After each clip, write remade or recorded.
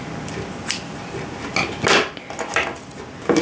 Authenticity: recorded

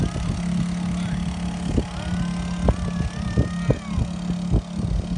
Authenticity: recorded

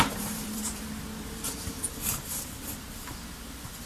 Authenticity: remade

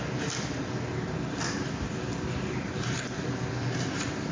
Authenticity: recorded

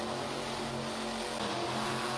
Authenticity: recorded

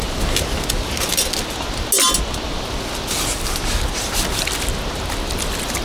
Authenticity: recorded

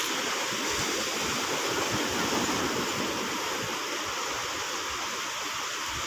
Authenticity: recorded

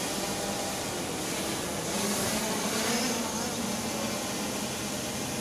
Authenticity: recorded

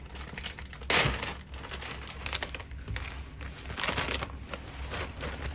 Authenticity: recorded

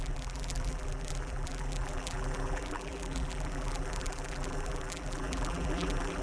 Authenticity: remade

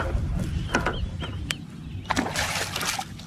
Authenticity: recorded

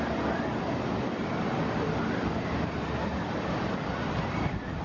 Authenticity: remade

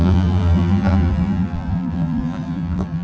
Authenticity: remade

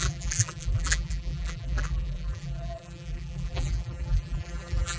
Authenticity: remade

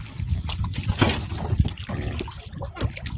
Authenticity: recorded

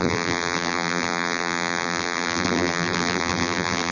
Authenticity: remade